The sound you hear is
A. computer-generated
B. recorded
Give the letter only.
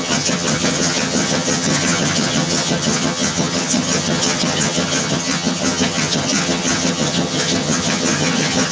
A